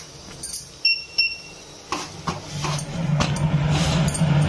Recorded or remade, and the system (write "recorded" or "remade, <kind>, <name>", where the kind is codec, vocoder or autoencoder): recorded